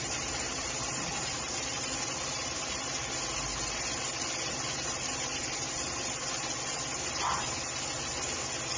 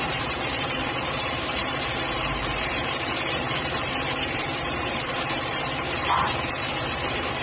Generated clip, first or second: second